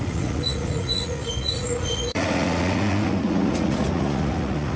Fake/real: fake